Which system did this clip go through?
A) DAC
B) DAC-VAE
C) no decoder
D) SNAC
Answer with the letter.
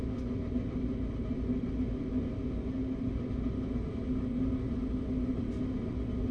C